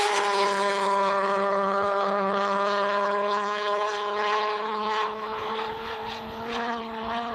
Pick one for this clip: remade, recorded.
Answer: remade